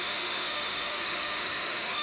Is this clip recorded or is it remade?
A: remade